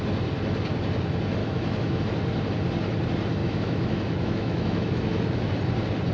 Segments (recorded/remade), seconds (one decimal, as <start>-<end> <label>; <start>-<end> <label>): 0.0-1.4 recorded; 1.4-2.0 remade; 2.0-3.4 recorded; 3.4-5.5 remade; 5.5-6.1 recorded